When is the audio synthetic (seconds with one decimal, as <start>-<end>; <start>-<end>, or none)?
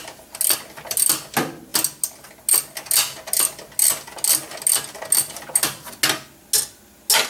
none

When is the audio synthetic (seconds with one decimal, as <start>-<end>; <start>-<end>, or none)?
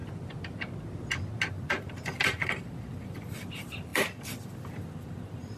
1.5-5.6